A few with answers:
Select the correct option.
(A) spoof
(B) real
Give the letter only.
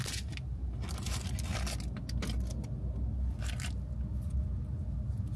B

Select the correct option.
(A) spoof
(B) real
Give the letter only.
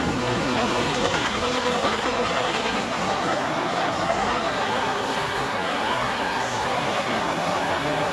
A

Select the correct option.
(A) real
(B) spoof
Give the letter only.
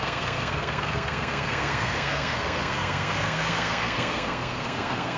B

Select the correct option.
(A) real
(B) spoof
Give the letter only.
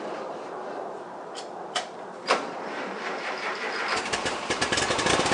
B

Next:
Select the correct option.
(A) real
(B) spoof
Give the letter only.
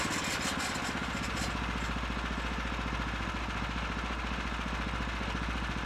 A